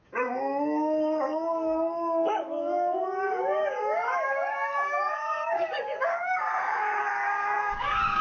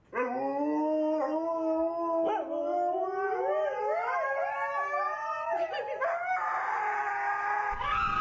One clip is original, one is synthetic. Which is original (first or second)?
second